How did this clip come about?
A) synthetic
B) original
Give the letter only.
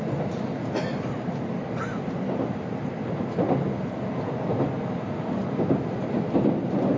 B